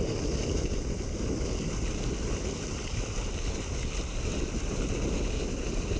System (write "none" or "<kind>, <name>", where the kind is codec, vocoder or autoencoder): none